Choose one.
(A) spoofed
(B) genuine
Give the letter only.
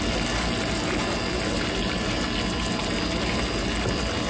B